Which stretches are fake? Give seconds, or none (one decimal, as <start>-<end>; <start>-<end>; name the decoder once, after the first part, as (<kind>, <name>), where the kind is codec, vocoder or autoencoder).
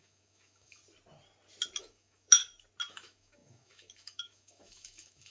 0.0-0.8 (autoencoder, DAC-VAE); 1.8-2.4; 2.9-5.3